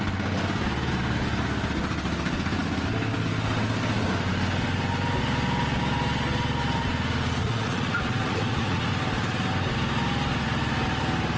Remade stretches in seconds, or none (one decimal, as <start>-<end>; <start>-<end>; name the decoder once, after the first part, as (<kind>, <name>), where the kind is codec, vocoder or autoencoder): 7.4-8.9 (vocoder, Vocos)